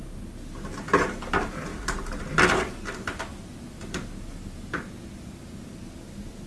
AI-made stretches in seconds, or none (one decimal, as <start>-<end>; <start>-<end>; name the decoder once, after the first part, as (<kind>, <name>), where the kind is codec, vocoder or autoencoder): none